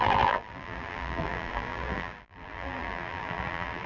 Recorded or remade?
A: remade